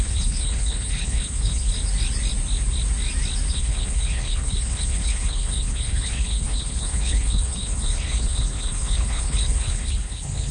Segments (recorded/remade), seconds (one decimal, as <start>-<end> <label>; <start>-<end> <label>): 0.0-1.7 remade; 1.7-3.5 recorded; 3.5-10.5 remade